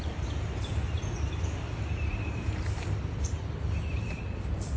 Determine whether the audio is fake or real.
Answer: fake